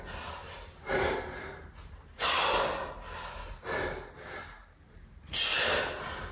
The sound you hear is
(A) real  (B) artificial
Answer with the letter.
A